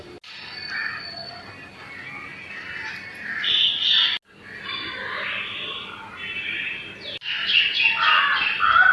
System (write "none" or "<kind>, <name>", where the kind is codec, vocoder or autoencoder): none